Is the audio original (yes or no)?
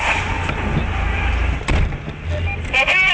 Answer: yes